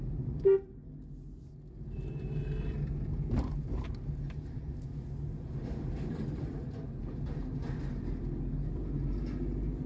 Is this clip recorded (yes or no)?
yes